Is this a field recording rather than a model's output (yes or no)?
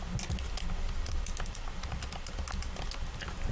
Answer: yes